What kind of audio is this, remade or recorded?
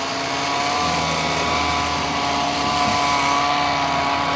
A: recorded